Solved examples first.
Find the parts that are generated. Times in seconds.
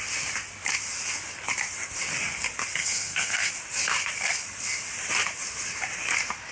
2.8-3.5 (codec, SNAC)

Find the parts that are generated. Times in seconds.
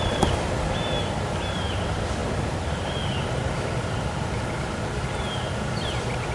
none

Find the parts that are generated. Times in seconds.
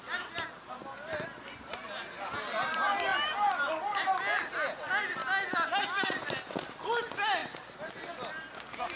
none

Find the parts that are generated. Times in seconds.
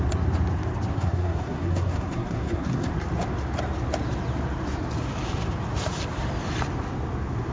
0.9-2.9 (codec, SNAC)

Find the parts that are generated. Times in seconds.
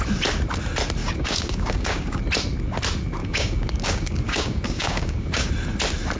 1.0-2.2 (codec, DAC); 3.2-5.5